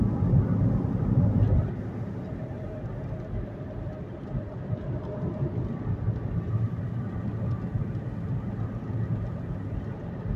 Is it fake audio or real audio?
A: real